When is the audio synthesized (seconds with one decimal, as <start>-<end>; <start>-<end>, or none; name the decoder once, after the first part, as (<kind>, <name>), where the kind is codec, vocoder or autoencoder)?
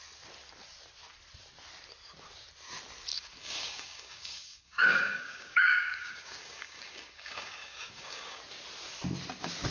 3.1-8.4 (codec, DAC)